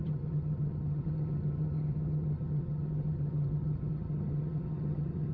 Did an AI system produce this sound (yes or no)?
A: yes